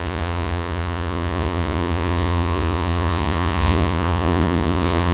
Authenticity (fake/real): fake